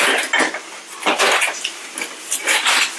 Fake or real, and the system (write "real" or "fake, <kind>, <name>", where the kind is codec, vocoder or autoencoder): real